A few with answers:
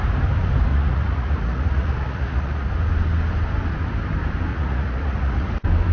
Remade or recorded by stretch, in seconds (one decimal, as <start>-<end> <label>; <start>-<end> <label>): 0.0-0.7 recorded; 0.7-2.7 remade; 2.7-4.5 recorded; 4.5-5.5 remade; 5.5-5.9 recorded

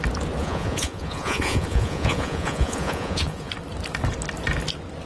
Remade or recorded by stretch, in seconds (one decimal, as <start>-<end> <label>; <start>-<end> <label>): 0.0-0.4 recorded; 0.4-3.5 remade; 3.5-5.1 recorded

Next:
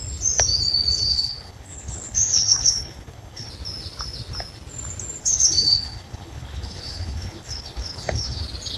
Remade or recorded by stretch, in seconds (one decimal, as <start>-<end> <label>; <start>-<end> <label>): 0.0-1.1 recorded; 1.1-3.5 remade; 3.5-5.2 recorded; 5.2-8.4 remade; 8.4-8.8 recorded

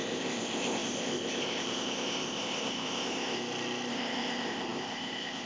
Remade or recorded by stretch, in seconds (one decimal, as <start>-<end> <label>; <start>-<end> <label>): 0.0-3.4 remade; 3.4-3.9 recorded; 3.9-5.5 remade